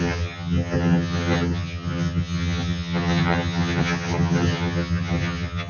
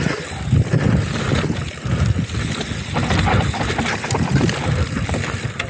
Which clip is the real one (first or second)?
second